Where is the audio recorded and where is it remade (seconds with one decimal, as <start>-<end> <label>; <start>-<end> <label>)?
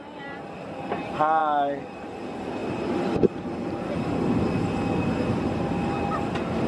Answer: 0.0-1.4 recorded; 1.4-2.2 remade; 2.2-2.6 recorded; 2.6-3.2 remade; 3.2-6.7 recorded